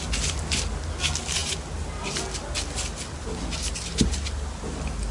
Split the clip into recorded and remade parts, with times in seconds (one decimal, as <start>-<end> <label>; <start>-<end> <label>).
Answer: 0.0-5.1 recorded